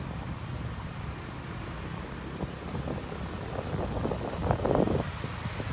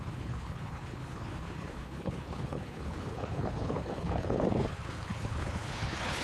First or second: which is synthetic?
second